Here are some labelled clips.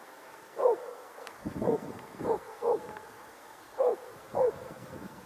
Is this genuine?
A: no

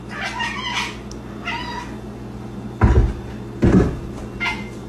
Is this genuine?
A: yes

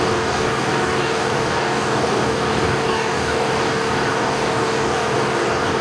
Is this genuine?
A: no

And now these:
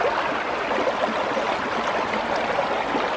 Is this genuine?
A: yes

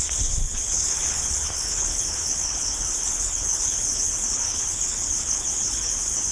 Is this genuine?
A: no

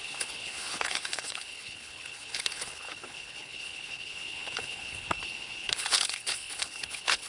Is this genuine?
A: no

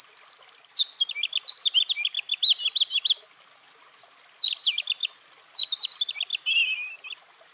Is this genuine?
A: yes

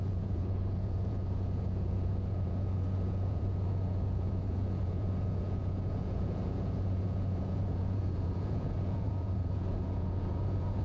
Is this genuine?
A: no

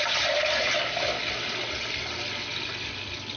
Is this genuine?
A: yes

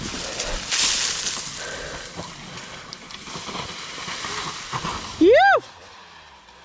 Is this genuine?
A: yes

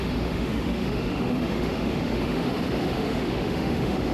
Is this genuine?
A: no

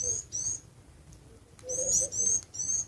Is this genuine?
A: yes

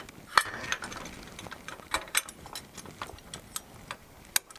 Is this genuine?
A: yes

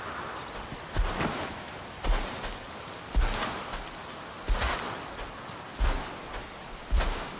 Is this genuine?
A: yes